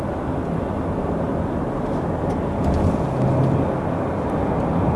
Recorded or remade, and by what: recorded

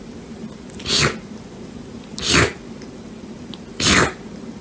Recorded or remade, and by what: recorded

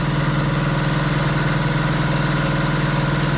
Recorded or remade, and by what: recorded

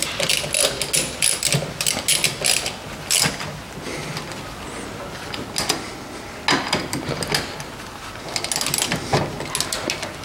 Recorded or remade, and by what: recorded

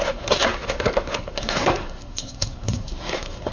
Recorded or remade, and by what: remade, codec, SNAC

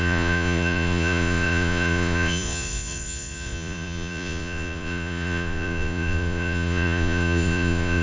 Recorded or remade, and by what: remade, vocoder, Vocos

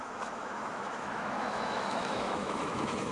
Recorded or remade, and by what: remade, autoencoder, DAC-VAE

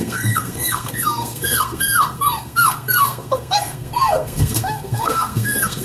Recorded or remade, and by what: remade, codec, SNAC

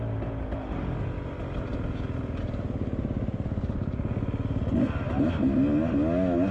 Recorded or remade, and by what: recorded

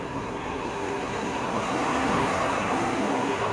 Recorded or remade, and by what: remade, codec, SNAC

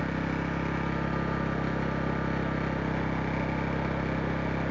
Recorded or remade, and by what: recorded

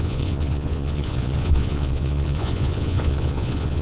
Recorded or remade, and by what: remade, vocoder, Vocos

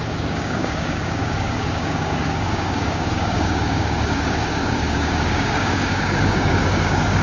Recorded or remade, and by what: remade, codec, DAC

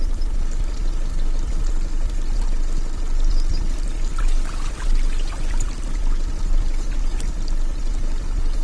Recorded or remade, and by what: remade, vocoder, BigVGAN v2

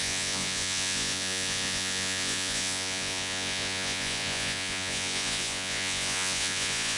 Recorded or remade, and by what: remade, vocoder, Vocos